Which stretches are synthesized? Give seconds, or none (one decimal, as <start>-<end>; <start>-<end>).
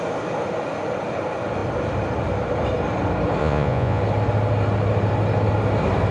3.4-4.0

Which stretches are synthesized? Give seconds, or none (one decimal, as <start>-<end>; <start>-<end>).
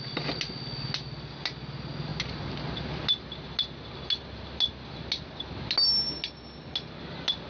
none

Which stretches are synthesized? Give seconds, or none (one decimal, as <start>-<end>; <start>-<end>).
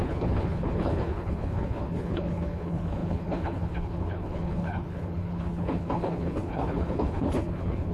0.0-7.9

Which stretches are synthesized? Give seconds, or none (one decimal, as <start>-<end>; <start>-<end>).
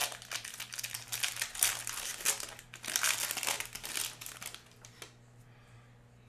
none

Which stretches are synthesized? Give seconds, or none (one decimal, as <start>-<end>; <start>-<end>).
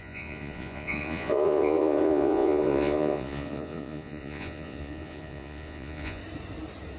0.0-6.2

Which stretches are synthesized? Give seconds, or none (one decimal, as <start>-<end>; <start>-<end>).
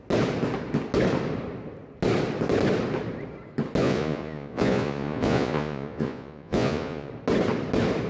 3.8-7.1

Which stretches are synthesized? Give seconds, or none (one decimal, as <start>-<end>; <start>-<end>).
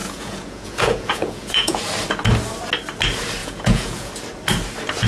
0.0-1.8; 3.4-4.1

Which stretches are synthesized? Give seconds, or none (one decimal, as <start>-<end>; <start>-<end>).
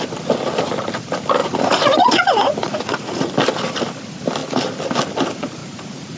1.4-3.3; 5.6-6.2